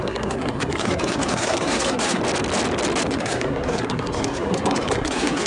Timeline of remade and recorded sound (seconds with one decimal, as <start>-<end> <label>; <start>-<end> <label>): 0.0-2.2 remade; 2.2-3.1 recorded; 3.1-5.5 remade